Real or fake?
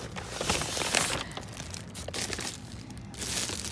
real